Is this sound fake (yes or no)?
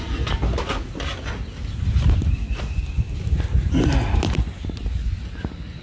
no